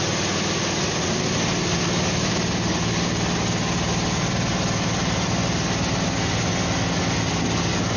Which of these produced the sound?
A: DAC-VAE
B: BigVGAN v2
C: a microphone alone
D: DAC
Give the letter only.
C